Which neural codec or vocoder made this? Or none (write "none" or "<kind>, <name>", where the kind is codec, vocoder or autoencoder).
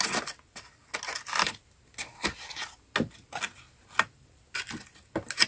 none